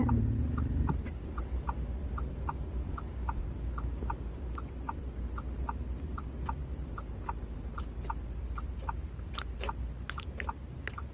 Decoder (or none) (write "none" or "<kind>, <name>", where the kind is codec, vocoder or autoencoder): none